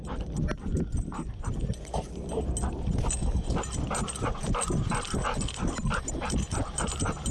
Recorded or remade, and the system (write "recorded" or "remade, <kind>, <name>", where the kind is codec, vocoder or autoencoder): recorded